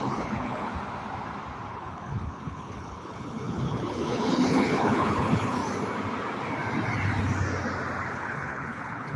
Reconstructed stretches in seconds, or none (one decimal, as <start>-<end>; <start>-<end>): 0.0-0.7; 1.7-5.6; 8.1-9.2